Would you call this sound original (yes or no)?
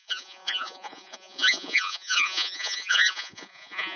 no